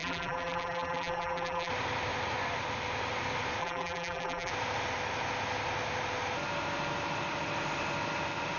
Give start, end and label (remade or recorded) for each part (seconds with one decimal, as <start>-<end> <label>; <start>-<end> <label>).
0.0-1.7 remade; 1.7-3.6 recorded; 3.6-4.5 remade; 4.5-8.6 recorded